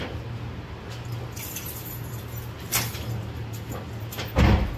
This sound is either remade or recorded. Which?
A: recorded